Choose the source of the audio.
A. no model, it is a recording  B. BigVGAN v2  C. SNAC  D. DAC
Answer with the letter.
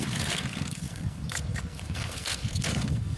C